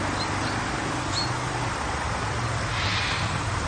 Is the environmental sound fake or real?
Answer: real